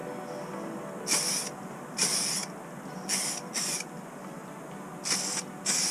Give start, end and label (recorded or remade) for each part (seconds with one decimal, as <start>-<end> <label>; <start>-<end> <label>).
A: 0.0-5.9 recorded